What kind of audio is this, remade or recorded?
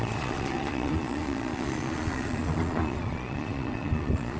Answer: remade